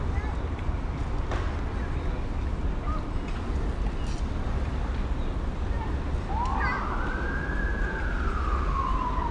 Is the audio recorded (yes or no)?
yes